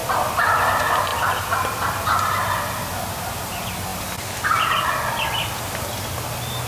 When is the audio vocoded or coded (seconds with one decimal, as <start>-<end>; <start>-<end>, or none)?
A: 0.0-0.7; 1.1-2.0